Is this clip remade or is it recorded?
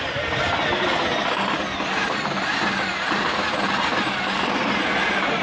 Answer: recorded